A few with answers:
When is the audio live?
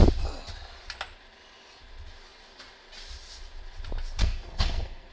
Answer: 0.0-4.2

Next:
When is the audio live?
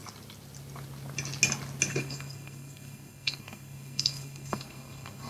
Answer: 0.0-1.9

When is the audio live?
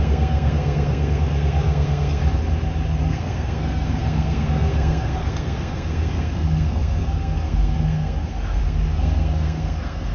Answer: 2.2-3.0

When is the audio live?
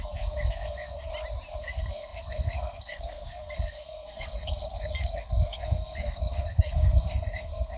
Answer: 1.1-1.6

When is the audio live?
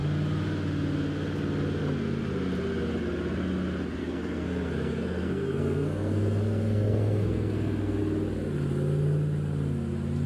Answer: 0.0-4.0; 8.0-10.3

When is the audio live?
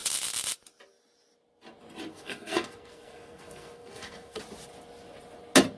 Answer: 0.0-2.1; 4.4-5.8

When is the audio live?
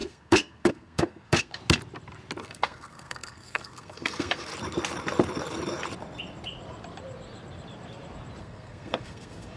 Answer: 1.6-2.4; 4.5-8.4